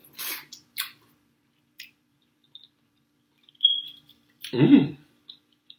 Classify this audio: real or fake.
fake